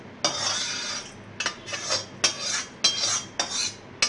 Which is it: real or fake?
real